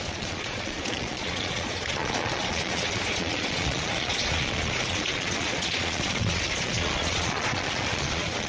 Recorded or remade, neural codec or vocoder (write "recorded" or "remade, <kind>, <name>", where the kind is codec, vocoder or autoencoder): remade, vocoder, Vocos